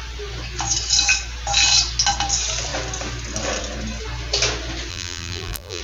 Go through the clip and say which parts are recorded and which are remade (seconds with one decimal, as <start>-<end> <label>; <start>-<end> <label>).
0.0-4.9 recorded; 4.9-5.8 remade